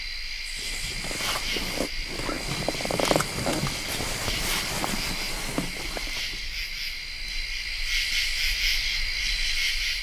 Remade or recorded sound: recorded